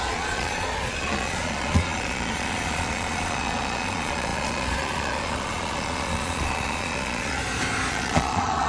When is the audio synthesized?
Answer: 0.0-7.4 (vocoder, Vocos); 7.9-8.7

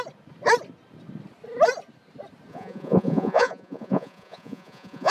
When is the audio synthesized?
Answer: 2.5-5.1 (vocoder, Vocos)

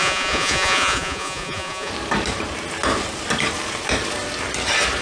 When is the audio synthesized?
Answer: 0.0-1.9 (vocoder, Vocos)

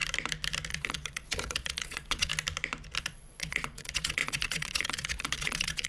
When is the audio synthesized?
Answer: 0.7-2.3 (vocoder, Vocos); 3.0-5.9

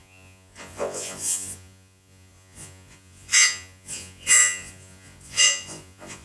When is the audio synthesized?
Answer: 0.0-6.2 (vocoder, Vocos)